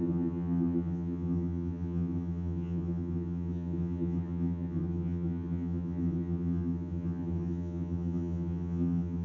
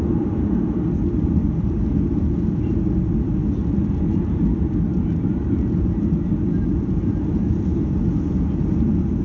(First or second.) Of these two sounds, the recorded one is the second